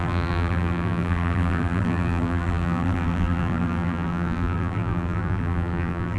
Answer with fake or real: fake